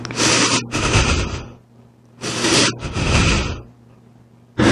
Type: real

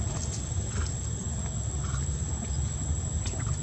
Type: real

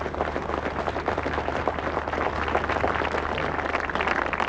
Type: real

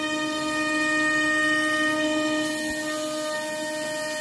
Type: real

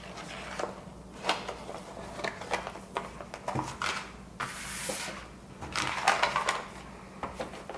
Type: real